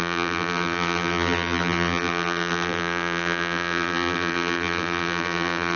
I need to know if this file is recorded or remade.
remade